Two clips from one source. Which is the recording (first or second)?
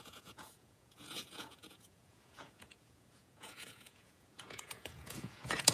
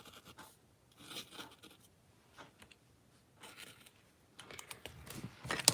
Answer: second